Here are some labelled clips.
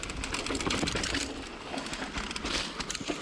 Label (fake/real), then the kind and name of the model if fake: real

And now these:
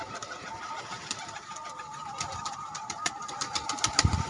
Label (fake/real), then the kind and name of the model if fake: real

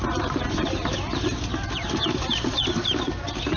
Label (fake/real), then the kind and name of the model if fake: real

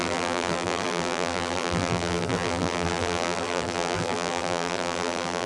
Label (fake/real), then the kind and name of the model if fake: fake, vocoder, BigVGAN v2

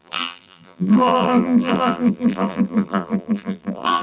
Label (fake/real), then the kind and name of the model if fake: fake, vocoder, BigVGAN v2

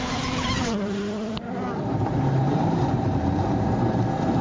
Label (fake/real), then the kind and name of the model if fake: fake, vocoder, BigVGAN v2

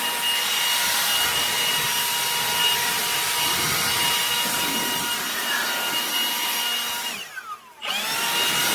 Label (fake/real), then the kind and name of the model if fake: real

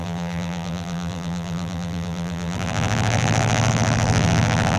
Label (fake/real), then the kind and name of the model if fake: fake, vocoder, BigVGAN v2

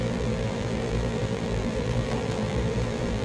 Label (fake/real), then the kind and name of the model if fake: fake, vocoder, BigVGAN v2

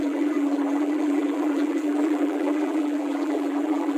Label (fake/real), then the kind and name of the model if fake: fake, vocoder, BigVGAN v2